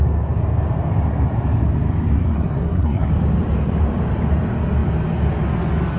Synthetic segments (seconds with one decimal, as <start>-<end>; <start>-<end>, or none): 2.2-3.1